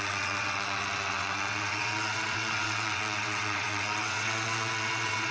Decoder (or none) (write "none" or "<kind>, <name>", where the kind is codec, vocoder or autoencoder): vocoder, WaveNeXt